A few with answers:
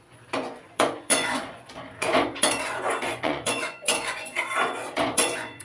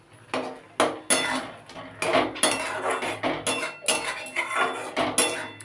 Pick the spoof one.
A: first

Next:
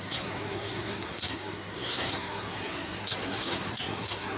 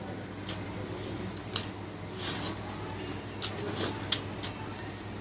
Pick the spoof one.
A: first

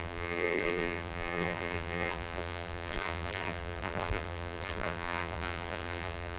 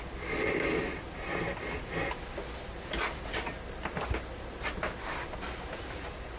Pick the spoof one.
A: first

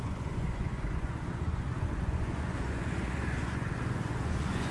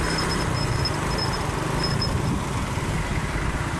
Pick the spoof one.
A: first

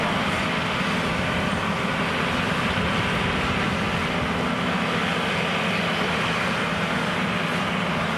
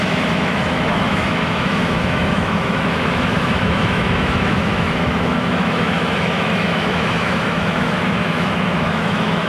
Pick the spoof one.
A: second